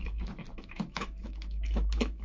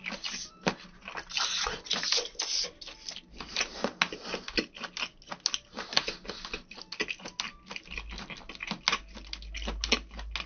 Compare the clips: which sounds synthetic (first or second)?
first